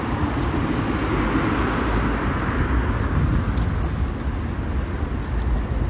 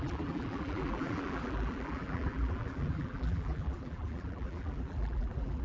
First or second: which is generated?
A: second